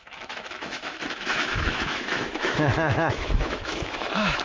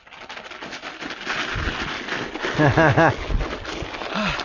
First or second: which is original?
second